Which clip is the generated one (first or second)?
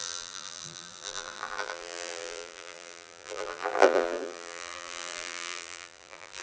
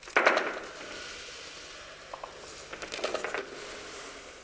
first